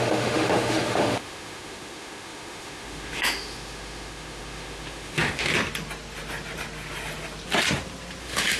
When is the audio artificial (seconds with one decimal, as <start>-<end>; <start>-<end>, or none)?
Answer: 0.0-5.5; 8.2-8.6